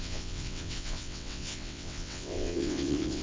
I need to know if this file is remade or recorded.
remade